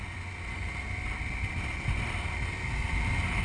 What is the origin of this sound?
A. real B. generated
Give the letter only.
A